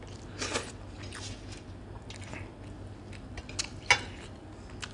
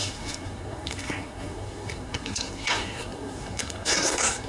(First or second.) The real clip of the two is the first